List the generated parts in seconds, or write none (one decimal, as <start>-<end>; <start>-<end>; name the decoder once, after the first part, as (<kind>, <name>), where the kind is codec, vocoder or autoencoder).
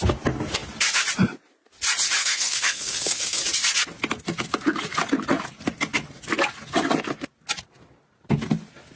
2.2-3.4 (codec, SNAC)